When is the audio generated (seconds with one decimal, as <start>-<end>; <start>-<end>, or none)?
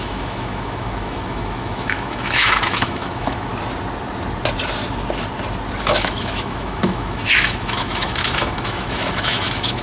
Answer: 0.0-3.5; 5.8-9.8